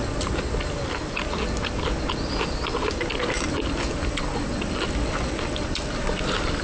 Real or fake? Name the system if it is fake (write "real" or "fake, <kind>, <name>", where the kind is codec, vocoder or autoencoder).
real